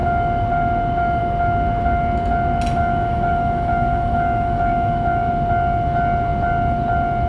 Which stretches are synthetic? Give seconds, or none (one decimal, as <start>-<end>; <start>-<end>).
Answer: 2.8-5.3